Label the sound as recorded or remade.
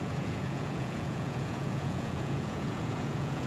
remade